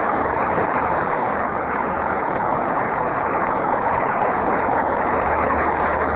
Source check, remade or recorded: remade